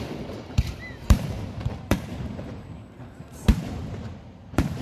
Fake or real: fake